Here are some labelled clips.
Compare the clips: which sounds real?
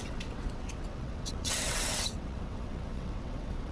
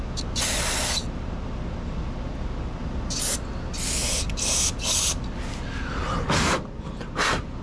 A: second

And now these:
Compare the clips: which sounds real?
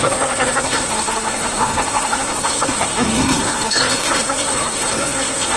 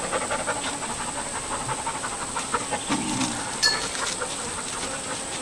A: second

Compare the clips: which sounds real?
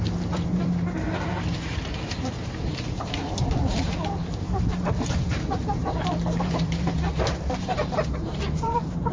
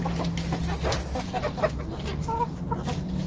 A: second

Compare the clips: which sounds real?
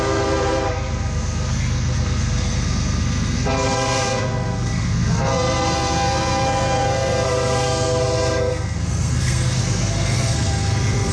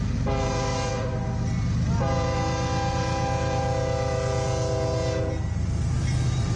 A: second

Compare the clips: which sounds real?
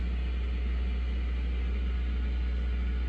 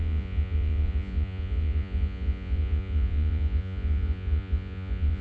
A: first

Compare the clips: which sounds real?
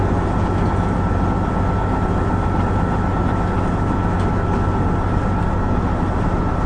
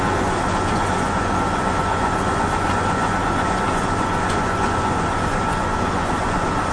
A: first